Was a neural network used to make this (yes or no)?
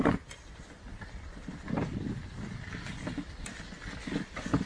no